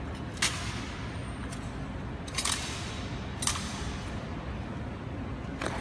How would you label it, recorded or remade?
recorded